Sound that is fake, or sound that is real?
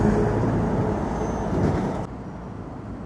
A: real